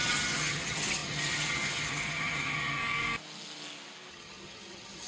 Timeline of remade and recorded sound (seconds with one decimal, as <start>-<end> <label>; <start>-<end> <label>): 0.0-2.8 remade; 2.8-4.1 recorded; 4.1-5.1 remade